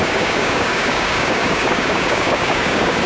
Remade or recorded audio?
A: remade